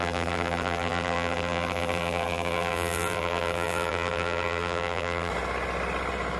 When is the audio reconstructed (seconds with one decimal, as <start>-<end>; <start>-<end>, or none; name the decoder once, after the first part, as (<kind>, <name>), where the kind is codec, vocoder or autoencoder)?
0.0-5.3 (vocoder, BigVGAN v2)